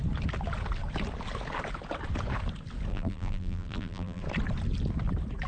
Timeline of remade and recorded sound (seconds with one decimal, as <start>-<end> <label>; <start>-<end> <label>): 0.0-2.9 recorded; 2.9-4.2 remade; 4.2-5.5 recorded